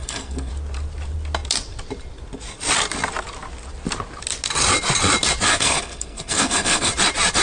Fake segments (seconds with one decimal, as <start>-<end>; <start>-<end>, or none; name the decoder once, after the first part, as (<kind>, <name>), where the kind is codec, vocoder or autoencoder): 0.0-0.5 (codec, SNAC); 5.5-6.9